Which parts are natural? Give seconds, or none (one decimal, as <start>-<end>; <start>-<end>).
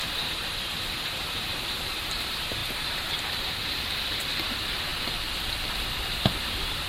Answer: 4.9-6.4